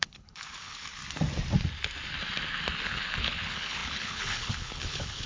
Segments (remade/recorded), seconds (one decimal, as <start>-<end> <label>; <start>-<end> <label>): 0.0-1.0 remade; 1.0-2.8 recorded; 2.8-5.3 remade